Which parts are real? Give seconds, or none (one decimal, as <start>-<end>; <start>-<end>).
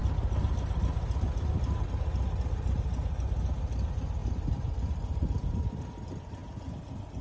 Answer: 0.0-7.2